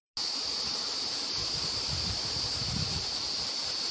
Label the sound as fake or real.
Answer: real